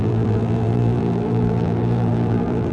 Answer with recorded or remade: remade